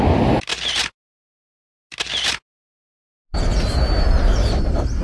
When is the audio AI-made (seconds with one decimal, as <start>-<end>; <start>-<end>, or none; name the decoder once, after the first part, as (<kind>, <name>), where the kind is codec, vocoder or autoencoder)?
none